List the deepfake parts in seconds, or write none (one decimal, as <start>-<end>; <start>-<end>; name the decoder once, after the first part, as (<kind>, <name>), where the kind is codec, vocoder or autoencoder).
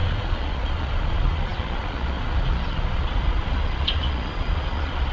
0.0-5.1 (vocoder, Vocos)